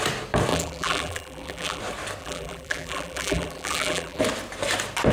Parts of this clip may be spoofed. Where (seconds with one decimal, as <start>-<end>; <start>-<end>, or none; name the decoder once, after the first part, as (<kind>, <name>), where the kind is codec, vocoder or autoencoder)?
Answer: 0.5-1.8 (vocoder, BigVGAN v2); 2.2-4.2